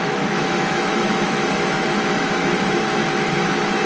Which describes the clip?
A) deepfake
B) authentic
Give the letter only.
A